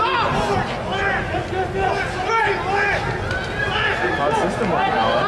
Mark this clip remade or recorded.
recorded